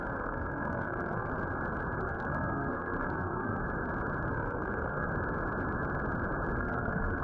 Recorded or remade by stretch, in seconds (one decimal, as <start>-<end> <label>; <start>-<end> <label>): 0.0-1.3 remade; 1.3-2.0 recorded; 2.0-3.6 remade; 3.6-4.3 recorded; 4.3-5.1 remade; 5.1-6.6 recorded; 6.6-7.2 remade